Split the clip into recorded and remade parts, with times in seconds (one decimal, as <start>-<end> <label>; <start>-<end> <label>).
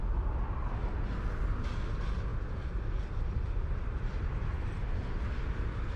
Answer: 0.0-6.0 recorded